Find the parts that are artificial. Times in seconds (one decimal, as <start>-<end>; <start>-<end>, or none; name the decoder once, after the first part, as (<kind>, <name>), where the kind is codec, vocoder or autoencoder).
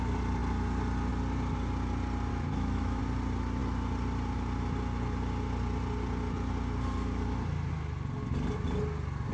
2.3-3.0 (autoencoder, DAC-VAE)